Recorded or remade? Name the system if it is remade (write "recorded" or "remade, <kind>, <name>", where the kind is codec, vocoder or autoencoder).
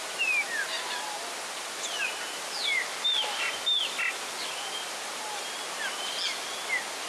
recorded